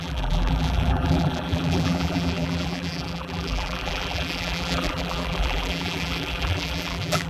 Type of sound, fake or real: fake